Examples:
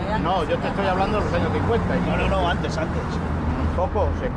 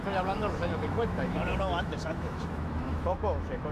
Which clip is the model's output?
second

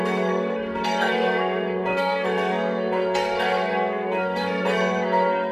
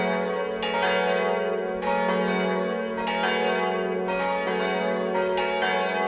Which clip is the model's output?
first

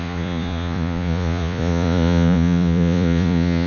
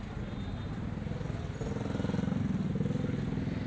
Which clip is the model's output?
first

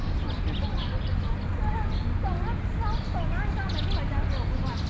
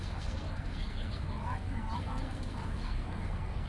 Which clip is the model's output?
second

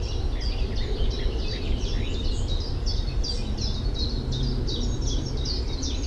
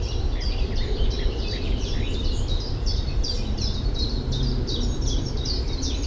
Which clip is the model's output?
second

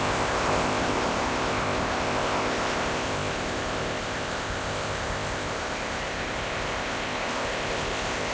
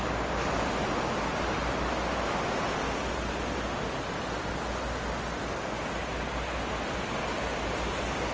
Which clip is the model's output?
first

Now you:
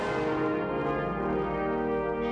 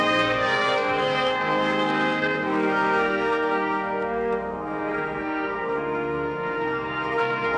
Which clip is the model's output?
second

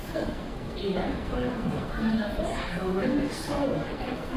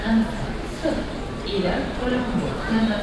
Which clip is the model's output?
first